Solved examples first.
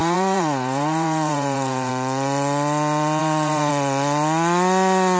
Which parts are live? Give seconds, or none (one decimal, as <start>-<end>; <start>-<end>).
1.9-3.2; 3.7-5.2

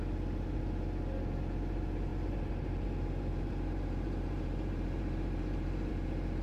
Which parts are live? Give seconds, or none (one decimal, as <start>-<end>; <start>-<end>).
0.0-2.1; 5.9-6.4

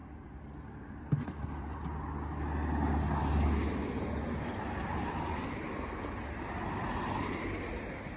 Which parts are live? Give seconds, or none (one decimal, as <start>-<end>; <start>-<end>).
1.8-8.2

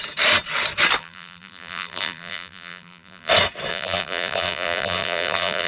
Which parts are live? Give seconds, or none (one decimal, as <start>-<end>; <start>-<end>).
0.0-1.0; 3.3-3.7